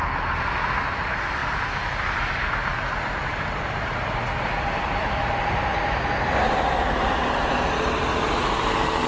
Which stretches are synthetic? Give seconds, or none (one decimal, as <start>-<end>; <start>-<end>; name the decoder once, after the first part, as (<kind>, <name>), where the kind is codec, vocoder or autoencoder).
2.7-7.5 (vocoder, BigVGAN v2)